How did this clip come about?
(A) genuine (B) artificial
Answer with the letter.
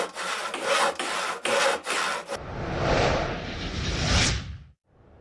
A